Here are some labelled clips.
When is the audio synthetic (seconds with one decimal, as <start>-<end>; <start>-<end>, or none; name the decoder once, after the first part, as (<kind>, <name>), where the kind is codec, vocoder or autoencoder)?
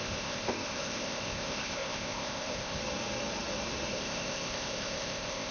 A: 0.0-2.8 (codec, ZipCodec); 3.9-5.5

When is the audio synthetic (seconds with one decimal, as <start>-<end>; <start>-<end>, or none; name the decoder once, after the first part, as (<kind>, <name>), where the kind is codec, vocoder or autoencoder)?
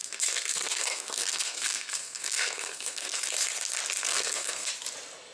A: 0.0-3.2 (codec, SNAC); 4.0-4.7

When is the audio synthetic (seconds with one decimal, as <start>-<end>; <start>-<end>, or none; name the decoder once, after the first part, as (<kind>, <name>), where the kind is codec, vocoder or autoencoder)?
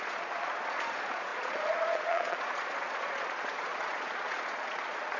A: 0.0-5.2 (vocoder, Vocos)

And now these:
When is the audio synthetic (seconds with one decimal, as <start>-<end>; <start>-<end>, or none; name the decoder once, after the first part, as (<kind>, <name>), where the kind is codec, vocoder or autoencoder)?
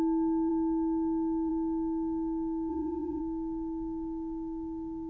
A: 2.7-3.2 (vocoder, WaveNeXt)